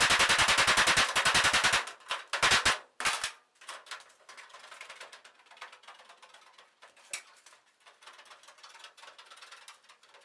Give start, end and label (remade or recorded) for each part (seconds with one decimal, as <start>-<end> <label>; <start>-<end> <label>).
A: 0.0-10.2 recorded